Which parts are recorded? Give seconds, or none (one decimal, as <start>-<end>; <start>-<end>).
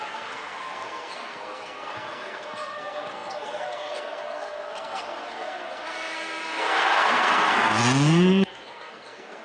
none